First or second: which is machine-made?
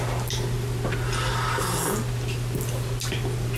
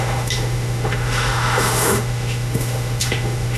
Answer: second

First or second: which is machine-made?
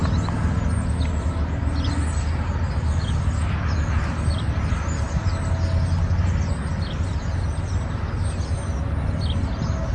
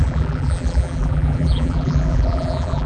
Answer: second